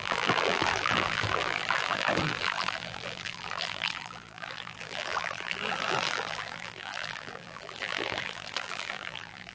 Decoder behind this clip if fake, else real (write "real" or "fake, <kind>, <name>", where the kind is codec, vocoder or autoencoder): fake, vocoder, BigVGAN v2